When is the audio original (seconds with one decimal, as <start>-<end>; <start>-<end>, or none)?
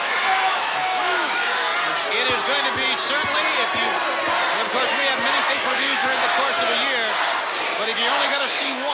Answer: 1.7-5.5; 6.2-8.1